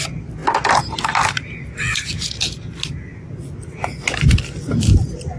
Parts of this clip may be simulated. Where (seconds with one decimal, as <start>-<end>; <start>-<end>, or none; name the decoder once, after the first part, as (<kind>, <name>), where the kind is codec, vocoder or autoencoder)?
none